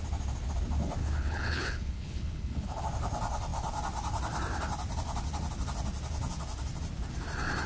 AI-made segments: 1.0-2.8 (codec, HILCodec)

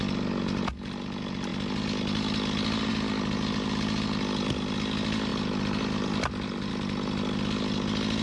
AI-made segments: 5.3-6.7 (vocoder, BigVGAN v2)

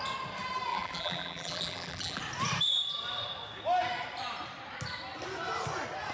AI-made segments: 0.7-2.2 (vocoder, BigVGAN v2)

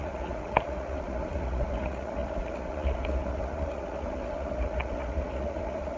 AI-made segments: 0.0-6.0 (vocoder, Vocos)